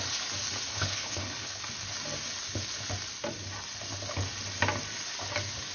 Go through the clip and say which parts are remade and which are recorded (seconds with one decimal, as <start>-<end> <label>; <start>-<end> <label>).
0.0-0.7 recorded; 0.7-1.6 remade; 1.6-5.7 recorded